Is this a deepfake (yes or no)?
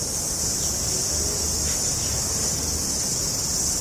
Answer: no